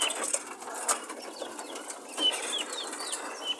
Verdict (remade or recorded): recorded